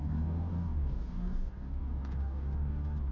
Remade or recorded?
remade